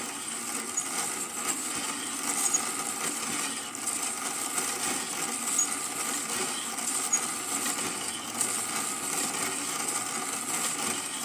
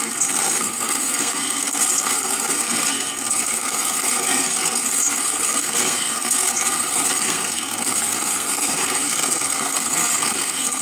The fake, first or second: second